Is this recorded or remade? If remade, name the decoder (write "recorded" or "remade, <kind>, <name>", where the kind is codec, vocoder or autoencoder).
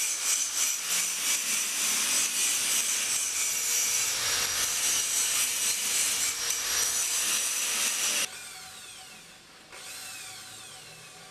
recorded